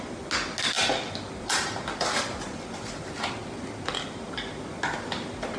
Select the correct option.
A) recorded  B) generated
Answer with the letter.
A